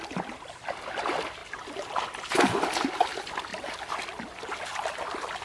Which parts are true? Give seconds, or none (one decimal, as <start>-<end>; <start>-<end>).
0.0-5.4